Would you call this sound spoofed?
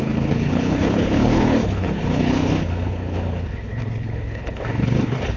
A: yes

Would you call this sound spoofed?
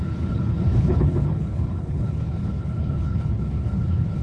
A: yes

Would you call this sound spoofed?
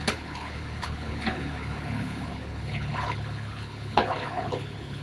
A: yes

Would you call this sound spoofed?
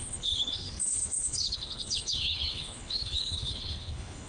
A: yes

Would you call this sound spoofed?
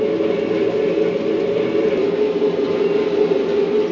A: no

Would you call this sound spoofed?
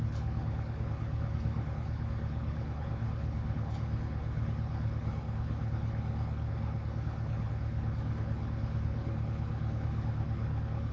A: yes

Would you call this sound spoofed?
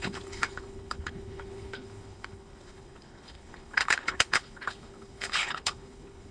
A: yes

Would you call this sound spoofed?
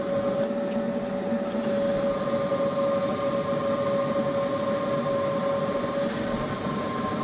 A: no